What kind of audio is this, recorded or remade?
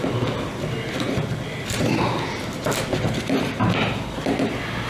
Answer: recorded